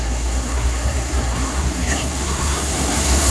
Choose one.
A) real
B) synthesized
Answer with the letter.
B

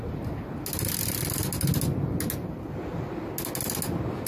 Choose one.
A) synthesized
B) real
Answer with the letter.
B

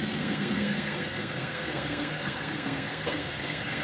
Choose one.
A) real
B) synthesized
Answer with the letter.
B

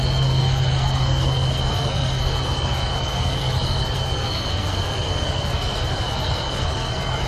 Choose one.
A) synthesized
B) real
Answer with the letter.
A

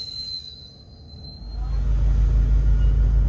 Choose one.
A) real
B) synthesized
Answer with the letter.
A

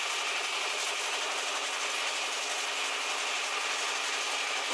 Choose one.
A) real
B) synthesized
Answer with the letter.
A